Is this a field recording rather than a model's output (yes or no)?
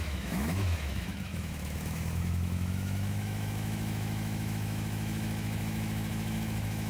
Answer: no